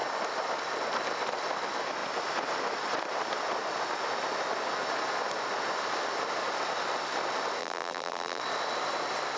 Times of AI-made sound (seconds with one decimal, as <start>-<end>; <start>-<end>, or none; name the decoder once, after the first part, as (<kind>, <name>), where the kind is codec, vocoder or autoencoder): 7.6-8.4 (vocoder, BigVGAN v2)